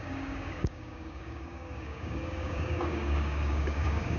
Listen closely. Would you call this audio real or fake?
fake